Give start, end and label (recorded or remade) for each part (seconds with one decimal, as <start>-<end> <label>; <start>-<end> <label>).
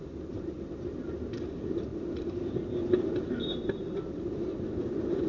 0.0-5.3 recorded